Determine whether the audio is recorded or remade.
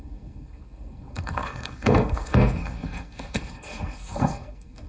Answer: remade